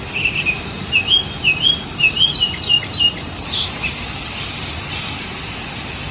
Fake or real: real